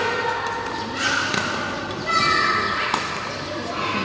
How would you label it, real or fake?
real